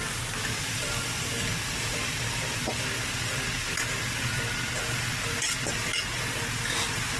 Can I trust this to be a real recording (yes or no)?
yes